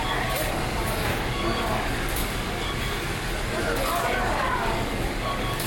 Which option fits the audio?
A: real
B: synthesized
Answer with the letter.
B